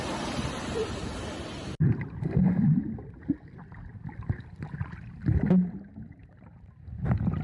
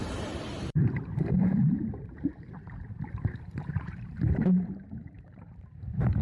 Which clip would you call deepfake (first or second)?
second